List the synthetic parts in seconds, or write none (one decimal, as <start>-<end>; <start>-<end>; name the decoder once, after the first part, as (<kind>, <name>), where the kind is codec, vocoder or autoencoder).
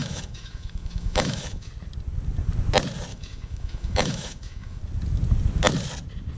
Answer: 0.0-1.7 (autoencoder, DAC-VAE); 3.1-4.8